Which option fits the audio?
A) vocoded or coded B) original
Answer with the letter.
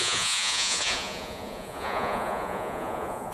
A